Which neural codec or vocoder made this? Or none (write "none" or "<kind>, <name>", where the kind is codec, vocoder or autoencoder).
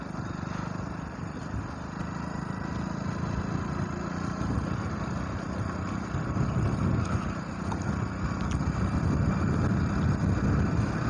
none